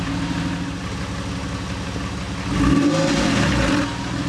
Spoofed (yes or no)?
no